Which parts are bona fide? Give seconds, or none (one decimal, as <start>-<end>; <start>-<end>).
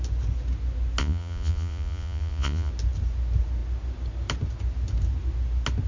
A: 0.0-1.0; 2.7-5.9